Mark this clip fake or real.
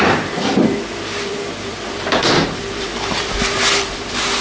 fake